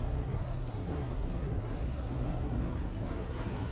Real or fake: fake